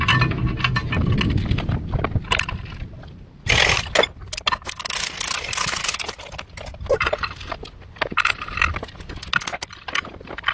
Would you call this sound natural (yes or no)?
yes